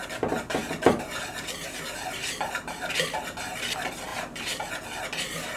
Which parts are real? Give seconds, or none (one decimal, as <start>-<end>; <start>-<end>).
0.0-0.6; 2.9-4.1; 4.7-5.6